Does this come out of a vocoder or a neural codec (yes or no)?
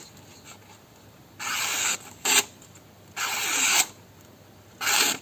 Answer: no